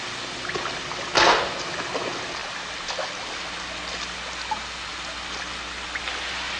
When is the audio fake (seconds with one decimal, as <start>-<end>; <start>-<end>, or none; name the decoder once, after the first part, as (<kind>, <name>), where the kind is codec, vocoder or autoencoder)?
none